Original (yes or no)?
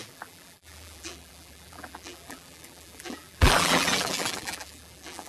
no